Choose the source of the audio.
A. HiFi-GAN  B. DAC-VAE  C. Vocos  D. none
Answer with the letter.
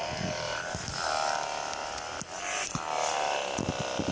D